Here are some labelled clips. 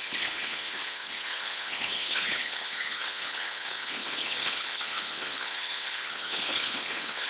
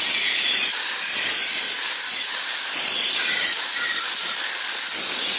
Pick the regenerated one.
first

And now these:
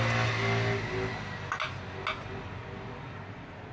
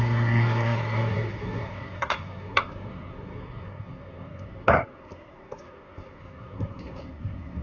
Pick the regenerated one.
second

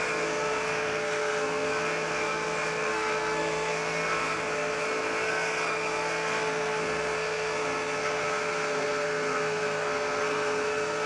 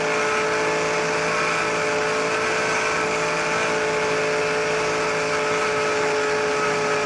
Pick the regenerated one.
first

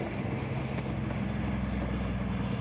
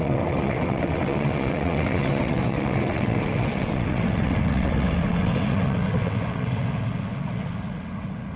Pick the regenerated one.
second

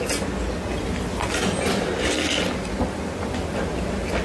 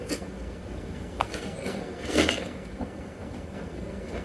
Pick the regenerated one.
second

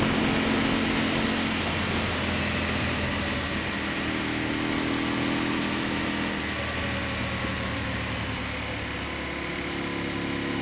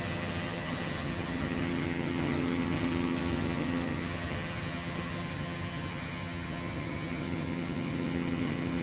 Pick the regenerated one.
second